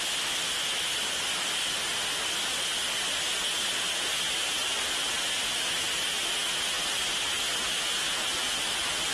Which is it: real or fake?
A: real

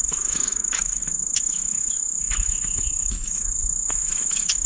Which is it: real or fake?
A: fake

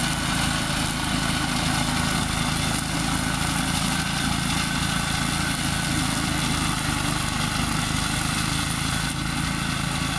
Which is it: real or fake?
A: real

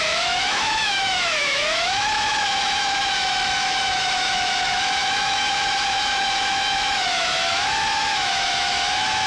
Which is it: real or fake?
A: fake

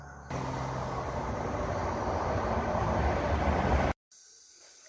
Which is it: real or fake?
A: real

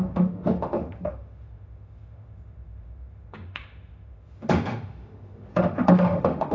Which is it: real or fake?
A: fake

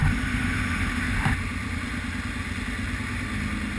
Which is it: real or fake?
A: real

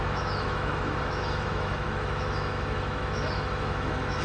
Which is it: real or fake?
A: fake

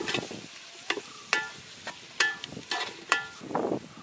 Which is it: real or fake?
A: real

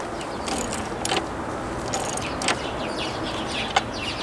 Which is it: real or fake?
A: real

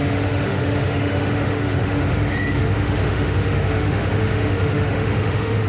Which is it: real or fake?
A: fake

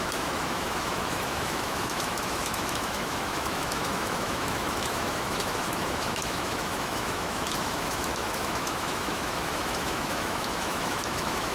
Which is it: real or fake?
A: fake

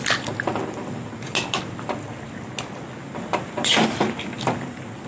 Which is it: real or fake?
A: real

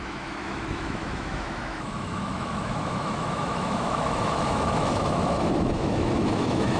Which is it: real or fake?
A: fake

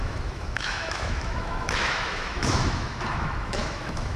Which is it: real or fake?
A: fake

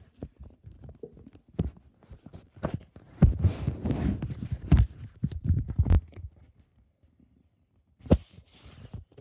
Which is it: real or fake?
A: real